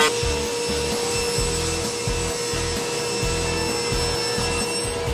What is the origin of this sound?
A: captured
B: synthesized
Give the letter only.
A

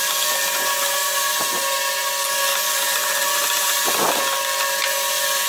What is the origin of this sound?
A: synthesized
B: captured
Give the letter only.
B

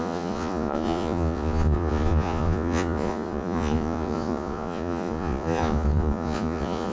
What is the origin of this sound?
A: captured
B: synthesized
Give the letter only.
B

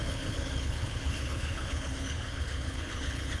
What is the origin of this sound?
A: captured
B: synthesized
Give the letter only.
B